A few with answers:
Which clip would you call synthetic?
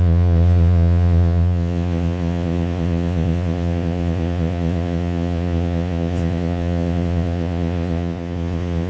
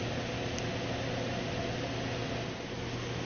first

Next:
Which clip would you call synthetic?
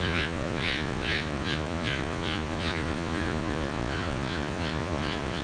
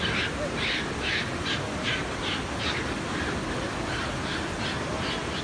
first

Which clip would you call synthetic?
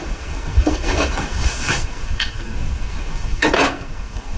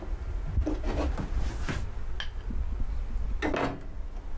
first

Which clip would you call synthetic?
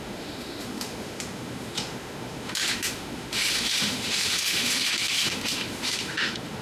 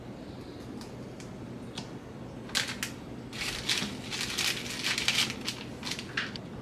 first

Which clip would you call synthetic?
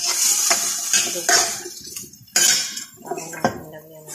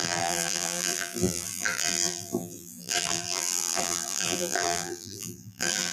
second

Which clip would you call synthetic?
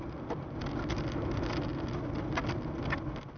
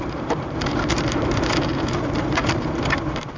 second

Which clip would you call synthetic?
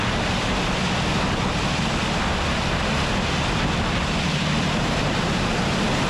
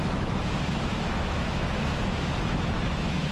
second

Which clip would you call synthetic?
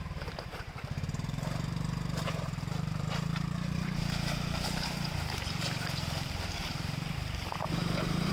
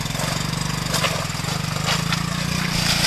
first